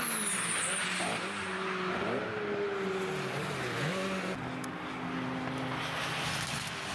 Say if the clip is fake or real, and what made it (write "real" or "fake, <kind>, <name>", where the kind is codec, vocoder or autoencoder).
real